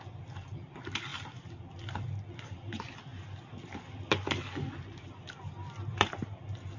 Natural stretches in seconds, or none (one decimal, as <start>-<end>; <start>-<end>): 0.0-6.8